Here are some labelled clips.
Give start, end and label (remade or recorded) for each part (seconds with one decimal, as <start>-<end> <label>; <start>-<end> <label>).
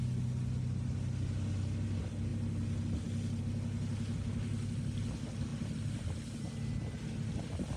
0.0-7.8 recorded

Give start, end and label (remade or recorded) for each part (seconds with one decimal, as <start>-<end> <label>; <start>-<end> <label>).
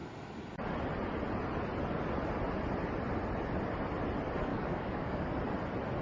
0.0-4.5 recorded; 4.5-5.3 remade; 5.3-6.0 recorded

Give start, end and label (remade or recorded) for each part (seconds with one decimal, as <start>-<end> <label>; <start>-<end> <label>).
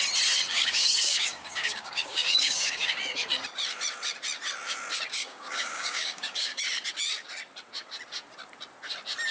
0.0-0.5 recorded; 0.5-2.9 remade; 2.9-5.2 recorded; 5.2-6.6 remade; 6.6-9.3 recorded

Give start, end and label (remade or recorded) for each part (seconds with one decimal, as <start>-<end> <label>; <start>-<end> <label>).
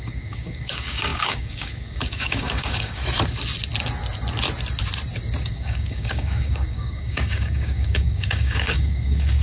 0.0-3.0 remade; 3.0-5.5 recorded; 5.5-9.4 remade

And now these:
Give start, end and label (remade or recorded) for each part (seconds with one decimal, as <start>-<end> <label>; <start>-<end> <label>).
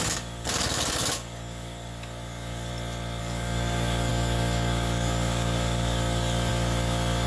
0.0-2.7 remade; 2.7-3.2 recorded; 3.2-7.3 remade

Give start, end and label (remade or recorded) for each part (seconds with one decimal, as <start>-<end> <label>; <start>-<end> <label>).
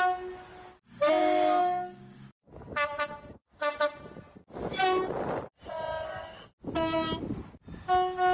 0.0-1.2 recorded; 1.2-3.7 remade; 3.7-8.3 recorded